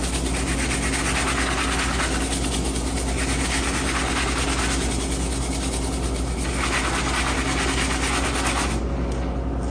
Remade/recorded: recorded